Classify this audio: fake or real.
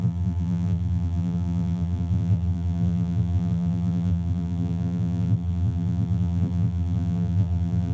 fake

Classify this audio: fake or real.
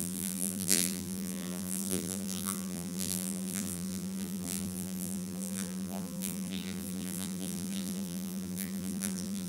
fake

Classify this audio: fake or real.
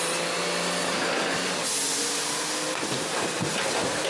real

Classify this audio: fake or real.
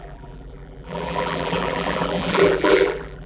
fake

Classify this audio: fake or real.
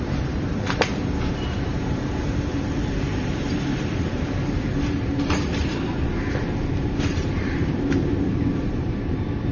fake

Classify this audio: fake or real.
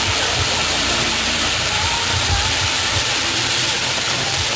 fake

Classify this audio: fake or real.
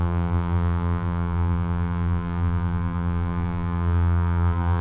fake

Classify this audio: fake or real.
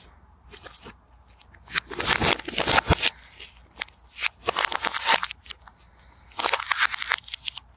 real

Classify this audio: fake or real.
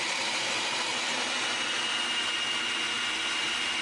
real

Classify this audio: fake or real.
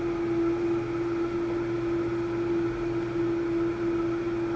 real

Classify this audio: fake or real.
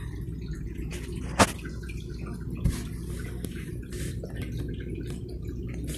real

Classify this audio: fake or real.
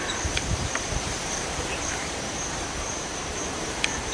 fake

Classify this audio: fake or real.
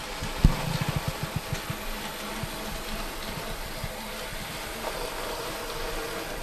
real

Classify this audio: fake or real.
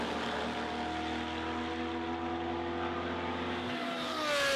real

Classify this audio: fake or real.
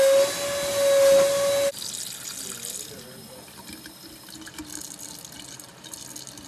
real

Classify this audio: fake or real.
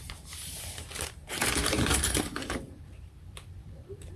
fake